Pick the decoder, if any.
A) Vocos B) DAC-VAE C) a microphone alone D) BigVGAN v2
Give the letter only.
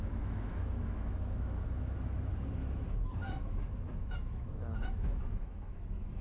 B